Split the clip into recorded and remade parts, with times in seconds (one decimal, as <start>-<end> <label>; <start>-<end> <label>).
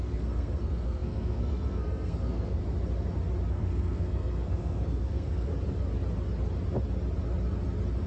0.0-2.6 remade; 2.6-3.5 recorded; 3.5-5.5 remade; 5.5-8.1 recorded